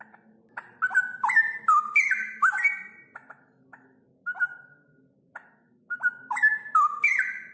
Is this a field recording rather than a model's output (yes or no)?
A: yes